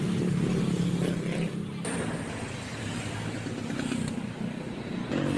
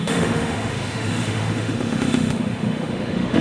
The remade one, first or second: second